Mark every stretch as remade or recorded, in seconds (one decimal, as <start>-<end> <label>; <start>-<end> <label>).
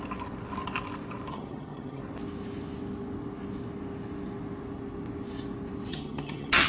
0.0-1.3 recorded; 1.3-2.0 remade; 2.0-5.9 recorded; 5.9-6.7 remade